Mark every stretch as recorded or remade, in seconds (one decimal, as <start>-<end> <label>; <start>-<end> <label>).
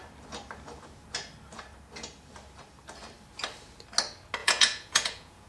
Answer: 0.0-4.4 recorded; 4.4-5.5 remade